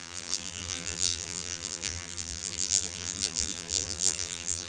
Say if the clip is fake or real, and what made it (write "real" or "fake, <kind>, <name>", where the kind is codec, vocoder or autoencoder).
fake, vocoder, BigVGAN v2